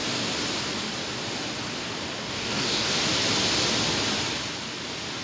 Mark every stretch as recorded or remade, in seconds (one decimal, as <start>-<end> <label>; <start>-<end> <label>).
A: 0.0-2.2 recorded; 2.2-2.9 remade; 2.9-5.2 recorded